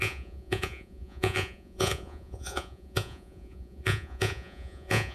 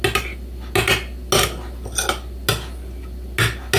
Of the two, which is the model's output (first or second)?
first